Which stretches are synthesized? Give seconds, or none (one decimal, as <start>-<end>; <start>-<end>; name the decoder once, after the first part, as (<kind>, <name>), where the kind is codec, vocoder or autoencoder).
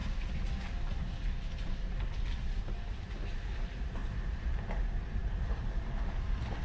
4.0-4.6 (vocoder, BigVGAN v2); 5.2-5.9